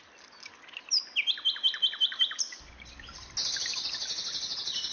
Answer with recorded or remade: recorded